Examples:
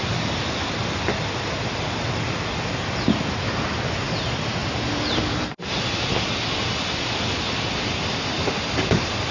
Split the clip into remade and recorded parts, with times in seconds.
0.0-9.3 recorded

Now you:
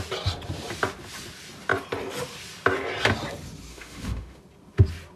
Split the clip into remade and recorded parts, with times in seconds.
0.0-3.7 recorded; 3.7-4.4 remade; 4.4-5.2 recorded

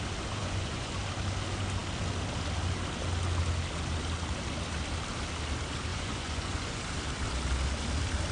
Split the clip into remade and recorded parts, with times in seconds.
0.0-0.4 recorded; 0.4-1.0 remade; 1.0-5.9 recorded; 5.9-6.8 remade; 6.8-8.3 recorded

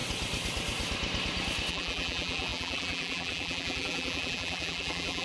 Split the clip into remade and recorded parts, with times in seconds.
0.0-1.7 recorded; 1.7-5.2 remade

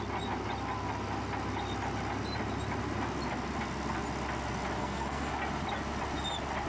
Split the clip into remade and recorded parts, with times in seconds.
0.0-4.8 recorded; 4.8-5.3 remade; 5.3-6.7 recorded